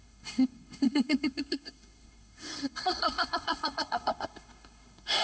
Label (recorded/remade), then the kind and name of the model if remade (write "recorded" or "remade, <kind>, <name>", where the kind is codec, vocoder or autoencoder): remade, codec, SNAC